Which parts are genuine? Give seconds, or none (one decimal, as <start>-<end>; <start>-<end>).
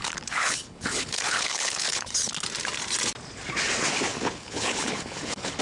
2.3-4.1